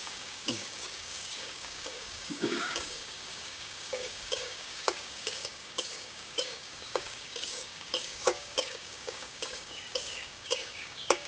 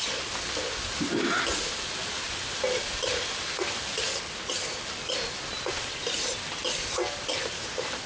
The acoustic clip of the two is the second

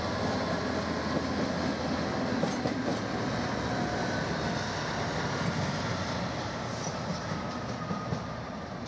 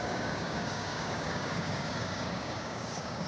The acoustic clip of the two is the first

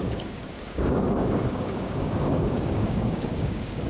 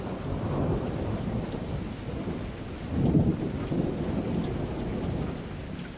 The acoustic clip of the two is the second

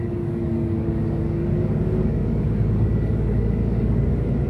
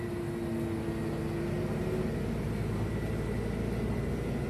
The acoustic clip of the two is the second